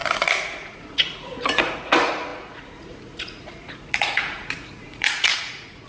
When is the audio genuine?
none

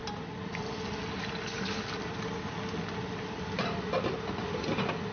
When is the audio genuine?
0.0-5.1